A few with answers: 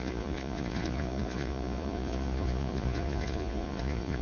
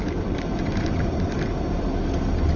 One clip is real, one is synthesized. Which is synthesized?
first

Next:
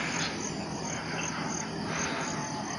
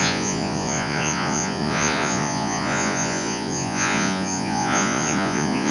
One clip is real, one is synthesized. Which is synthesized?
second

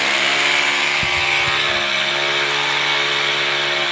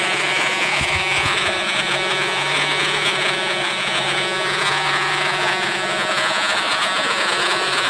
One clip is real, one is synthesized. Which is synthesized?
second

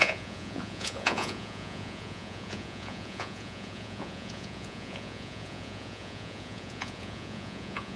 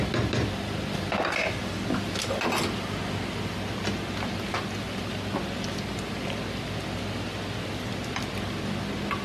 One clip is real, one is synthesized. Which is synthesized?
first